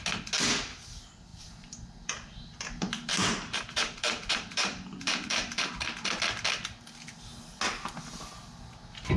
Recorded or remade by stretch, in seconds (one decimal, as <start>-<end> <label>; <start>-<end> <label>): 0.0-1.3 recorded; 1.3-6.2 remade; 6.2-9.2 recorded